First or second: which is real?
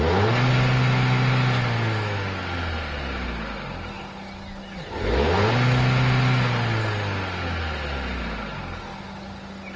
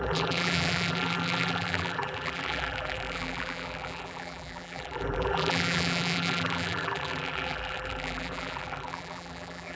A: first